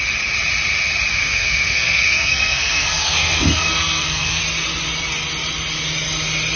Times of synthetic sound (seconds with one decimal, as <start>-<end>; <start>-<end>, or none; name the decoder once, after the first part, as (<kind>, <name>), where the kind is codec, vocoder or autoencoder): 1.2-4.4 (codec, SNAC)